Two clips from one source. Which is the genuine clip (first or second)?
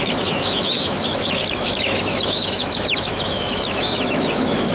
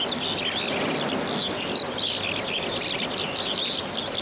second